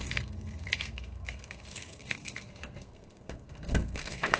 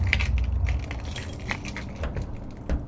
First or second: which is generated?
first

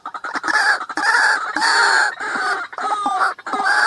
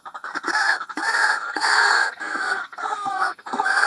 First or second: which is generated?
second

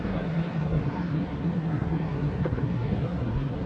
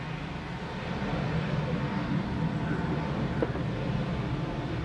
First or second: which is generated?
first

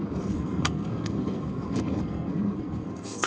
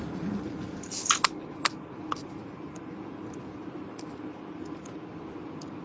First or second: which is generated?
first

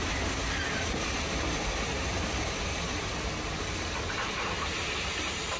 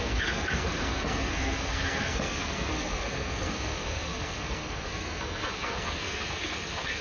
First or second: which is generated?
second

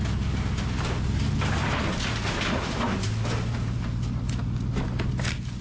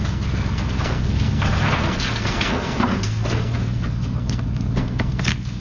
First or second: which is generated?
second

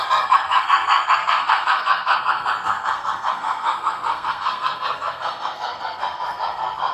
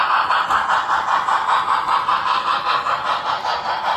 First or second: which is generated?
first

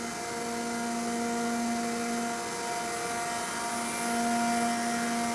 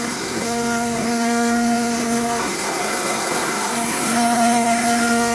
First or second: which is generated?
second